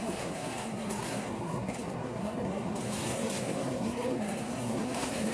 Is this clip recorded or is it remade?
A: remade